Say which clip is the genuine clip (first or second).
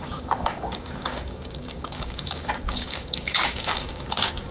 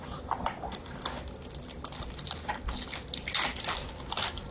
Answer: second